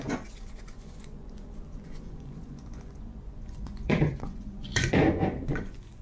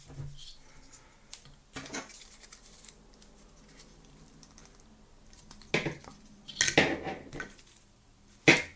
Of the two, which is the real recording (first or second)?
second